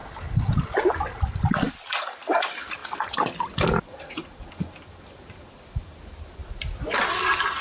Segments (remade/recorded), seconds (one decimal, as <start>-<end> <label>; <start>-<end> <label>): 0.0-0.9 recorded; 0.9-6.4 remade; 6.4-7.6 recorded